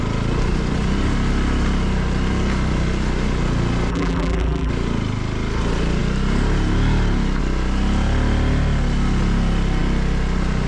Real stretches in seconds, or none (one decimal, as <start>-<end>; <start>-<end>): 0.0-3.9; 4.7-10.7